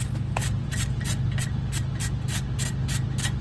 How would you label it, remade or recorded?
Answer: recorded